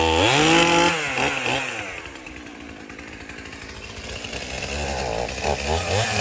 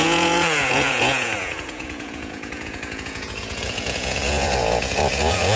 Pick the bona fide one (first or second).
first